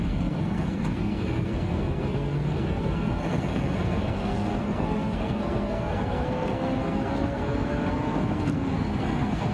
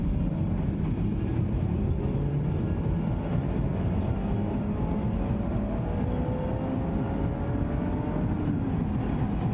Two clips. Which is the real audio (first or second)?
second